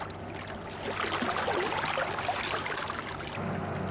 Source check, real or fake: real